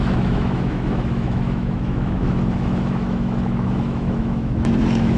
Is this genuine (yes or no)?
no